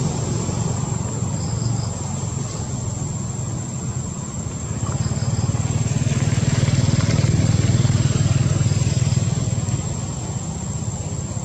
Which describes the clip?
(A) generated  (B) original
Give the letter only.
B